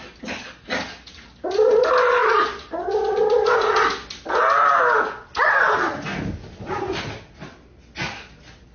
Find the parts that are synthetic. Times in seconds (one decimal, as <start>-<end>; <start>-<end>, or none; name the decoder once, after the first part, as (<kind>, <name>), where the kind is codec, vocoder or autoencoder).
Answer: none